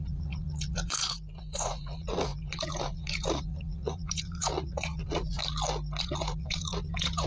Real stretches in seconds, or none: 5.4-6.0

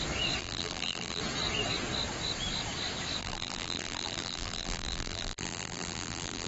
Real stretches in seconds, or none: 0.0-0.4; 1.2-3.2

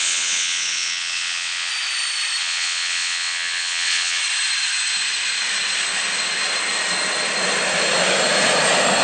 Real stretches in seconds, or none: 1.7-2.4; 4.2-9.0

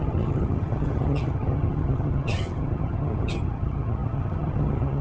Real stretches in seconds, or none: none

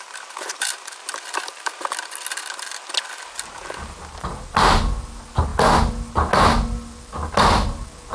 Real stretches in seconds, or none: 0.0-8.1